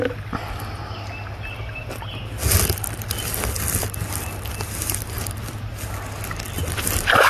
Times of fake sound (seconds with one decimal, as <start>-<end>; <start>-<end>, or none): none

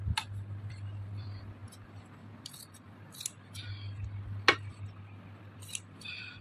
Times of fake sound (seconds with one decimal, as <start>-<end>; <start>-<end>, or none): 0.0-1.6; 5.4-6.4

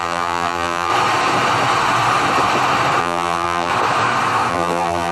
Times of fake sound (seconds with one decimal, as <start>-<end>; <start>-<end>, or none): 0.0-0.9; 3.0-3.7; 4.5-5.1